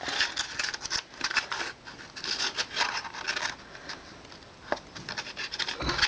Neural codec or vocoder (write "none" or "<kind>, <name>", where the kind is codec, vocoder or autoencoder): none